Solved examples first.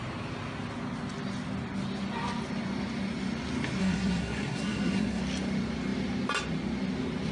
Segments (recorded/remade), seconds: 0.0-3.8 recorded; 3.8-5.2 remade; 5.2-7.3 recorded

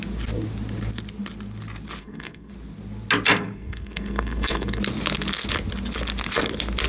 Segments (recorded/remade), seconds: 0.0-2.0 recorded; 2.0-2.5 remade; 2.5-3.4 recorded; 3.4-4.8 remade; 4.8-6.9 recorded

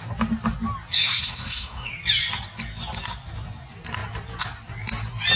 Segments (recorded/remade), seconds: 0.0-0.9 recorded; 0.9-1.9 remade; 1.9-5.4 recorded

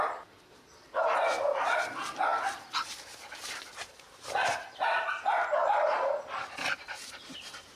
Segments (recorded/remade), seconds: 0.0-2.3 remade; 2.3-3.4 recorded; 3.4-7.8 remade

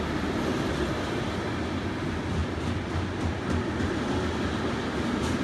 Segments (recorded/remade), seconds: 0.0-5.4 recorded